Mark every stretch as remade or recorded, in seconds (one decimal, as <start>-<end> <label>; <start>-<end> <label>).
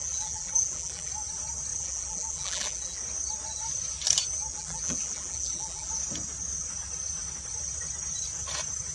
0.0-1.1 remade; 1.1-1.7 recorded; 1.7-3.0 remade; 3.0-4.5 recorded; 4.5-5.9 remade; 5.9-8.9 recorded